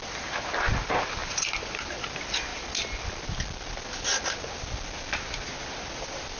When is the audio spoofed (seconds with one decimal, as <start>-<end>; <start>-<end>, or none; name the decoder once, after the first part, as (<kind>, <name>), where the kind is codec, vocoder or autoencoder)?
none